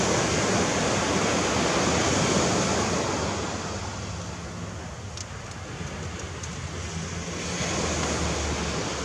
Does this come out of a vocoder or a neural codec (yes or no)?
no